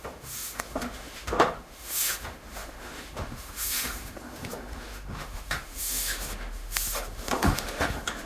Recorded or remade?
remade